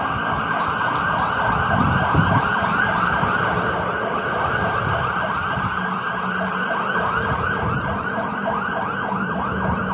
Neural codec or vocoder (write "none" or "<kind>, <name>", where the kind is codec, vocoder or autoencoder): vocoder, BigVGAN v2